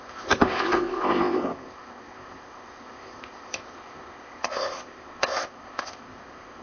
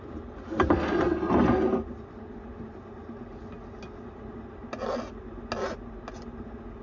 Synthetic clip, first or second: first